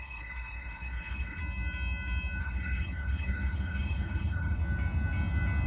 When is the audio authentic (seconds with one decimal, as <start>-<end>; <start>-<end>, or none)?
1.4-2.4; 4.6-5.7